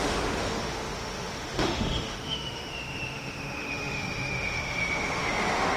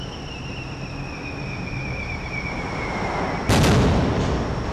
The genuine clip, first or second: second